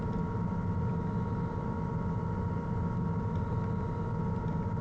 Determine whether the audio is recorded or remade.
recorded